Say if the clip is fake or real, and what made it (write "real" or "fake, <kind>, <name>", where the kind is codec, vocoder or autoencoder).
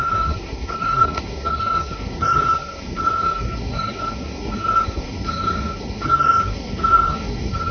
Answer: fake, codec, SNAC